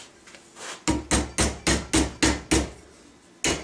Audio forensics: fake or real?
real